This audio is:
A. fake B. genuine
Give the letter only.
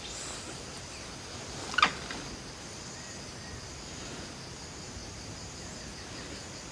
B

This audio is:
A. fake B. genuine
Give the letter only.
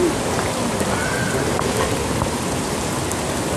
B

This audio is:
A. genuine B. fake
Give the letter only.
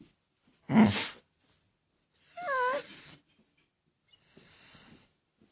A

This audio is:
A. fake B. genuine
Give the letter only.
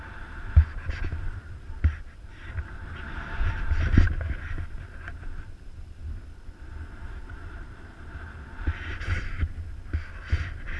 B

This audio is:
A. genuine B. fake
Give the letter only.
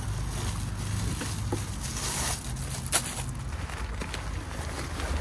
A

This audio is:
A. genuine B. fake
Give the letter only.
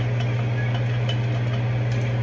A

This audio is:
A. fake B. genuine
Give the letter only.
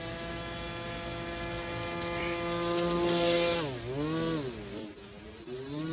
B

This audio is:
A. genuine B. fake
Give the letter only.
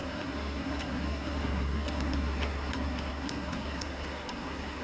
B